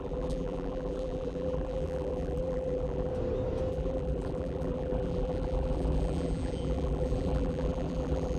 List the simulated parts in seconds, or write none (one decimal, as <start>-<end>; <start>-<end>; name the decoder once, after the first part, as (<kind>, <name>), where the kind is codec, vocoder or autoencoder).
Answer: 0.0-3.1 (vocoder, BigVGAN v2); 3.7-8.4